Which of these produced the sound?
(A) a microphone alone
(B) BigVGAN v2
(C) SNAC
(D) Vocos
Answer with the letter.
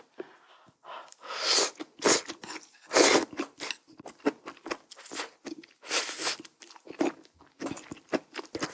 A